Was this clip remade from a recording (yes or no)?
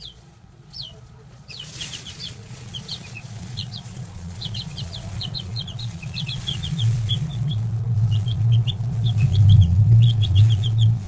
yes